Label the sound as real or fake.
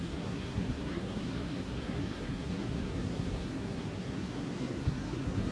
fake